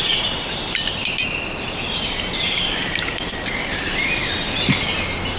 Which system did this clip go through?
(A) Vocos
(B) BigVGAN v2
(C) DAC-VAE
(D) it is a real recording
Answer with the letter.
D